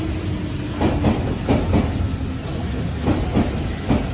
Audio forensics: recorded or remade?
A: recorded